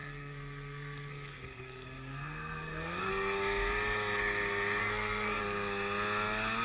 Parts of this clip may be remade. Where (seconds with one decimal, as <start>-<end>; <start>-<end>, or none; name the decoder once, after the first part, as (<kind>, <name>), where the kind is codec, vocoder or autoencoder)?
0.0-3.1 (codec, SNAC); 4.8-5.4